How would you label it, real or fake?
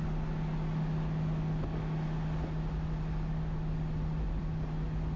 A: real